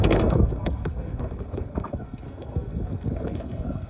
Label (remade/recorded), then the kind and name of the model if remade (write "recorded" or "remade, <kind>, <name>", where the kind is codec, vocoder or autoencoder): remade, codec, SNAC